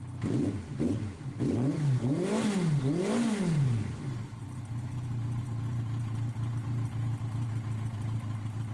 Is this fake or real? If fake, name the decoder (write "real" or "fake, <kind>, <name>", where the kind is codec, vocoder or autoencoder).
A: real